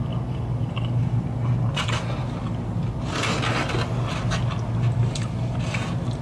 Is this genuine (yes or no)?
yes